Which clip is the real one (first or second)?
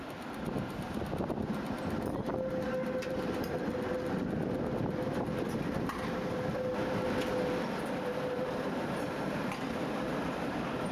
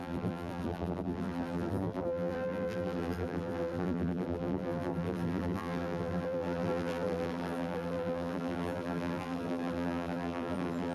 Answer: first